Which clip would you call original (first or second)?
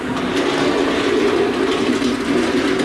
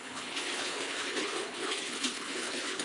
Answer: first